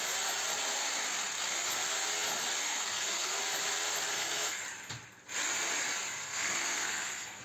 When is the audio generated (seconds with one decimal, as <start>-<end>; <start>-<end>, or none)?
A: 2.6-3.4; 4.1-4.6; 6.2-7.4